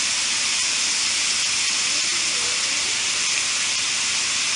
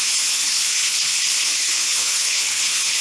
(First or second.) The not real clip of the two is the second